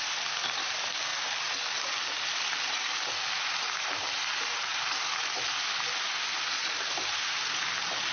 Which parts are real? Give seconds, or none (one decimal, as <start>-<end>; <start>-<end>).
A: 0.0-8.1